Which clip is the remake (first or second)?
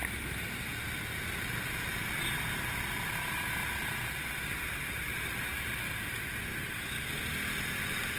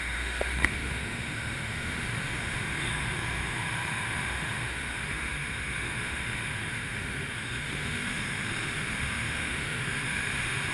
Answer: second